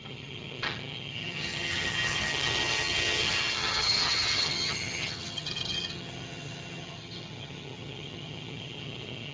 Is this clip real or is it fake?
fake